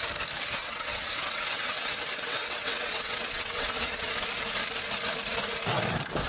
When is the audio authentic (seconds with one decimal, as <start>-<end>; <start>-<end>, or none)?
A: 0.0-0.6; 4.1-6.3